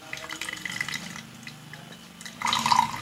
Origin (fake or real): real